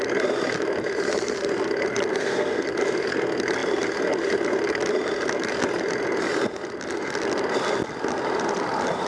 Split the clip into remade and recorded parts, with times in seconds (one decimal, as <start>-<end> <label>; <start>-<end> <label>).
0.0-2.1 recorded; 2.1-2.6 remade; 2.6-9.1 recorded